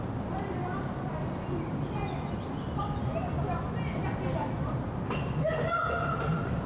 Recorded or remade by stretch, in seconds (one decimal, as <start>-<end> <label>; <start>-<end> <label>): 0.0-6.7 recorded